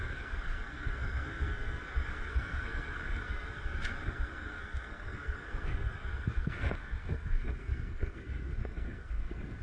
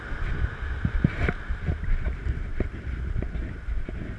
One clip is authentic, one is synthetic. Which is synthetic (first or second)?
first